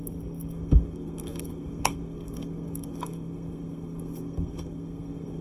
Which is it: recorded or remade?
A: remade